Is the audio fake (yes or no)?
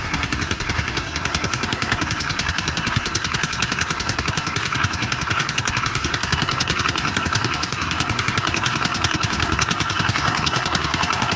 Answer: yes